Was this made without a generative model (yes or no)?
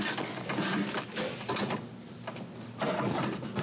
yes